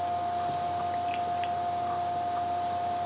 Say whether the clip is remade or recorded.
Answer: recorded